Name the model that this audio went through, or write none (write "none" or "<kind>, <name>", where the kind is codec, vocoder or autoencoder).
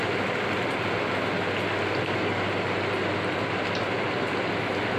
none